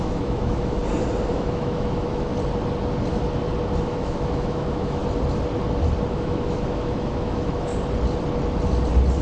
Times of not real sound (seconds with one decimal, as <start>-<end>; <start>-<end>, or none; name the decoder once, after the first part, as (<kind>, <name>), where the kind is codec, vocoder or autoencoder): 0.0-0.8 (autoencoder, DAC-VAE); 1.3-2.3; 3.8-5.0; 6.1-7.7